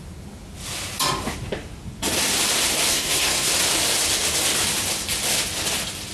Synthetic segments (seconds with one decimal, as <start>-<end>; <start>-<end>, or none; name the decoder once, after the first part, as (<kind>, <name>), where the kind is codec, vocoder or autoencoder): 2.9-3.5 (codec, SNAC)